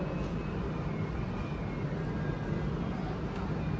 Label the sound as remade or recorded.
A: recorded